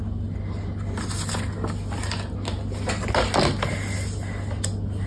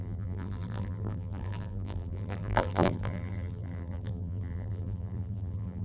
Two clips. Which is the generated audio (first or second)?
second